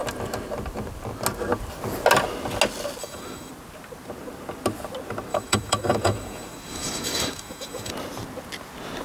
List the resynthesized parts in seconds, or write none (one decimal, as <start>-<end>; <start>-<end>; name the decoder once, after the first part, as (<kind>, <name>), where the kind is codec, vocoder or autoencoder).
3.0-3.5 (autoencoder, DAC-VAE); 5.3-7.9